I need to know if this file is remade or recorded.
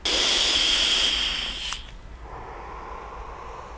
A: recorded